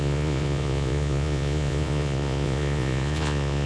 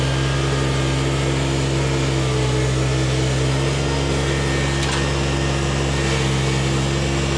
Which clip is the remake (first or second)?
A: first